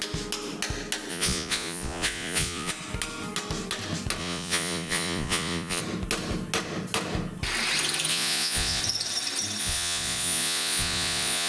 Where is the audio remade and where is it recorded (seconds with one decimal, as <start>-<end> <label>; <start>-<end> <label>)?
0.0-1.1 recorded; 1.1-2.7 remade; 2.7-4.2 recorded; 4.2-5.8 remade; 5.8-8.1 recorded; 8.1-8.8 remade; 8.8-9.6 recorded; 9.6-11.5 remade

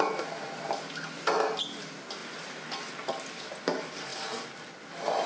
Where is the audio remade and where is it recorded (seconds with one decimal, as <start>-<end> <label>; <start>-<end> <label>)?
0.0-5.3 recorded

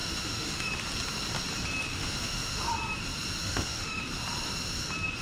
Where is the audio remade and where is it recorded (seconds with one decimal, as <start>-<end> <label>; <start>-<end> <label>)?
0.0-0.7 remade; 0.7-1.9 recorded; 1.9-2.7 remade; 2.7-3.4 recorded; 3.4-4.0 remade; 4.0-5.2 recorded

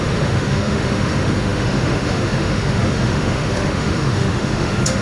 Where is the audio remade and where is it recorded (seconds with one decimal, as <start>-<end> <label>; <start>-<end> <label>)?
0.0-5.0 remade

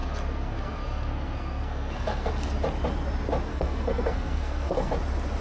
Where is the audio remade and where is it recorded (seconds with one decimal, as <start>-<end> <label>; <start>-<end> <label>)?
0.0-2.3 remade; 2.3-3.5 recorded; 3.5-4.9 remade; 4.9-5.4 recorded